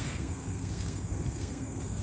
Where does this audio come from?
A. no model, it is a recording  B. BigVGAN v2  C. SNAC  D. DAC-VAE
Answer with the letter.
C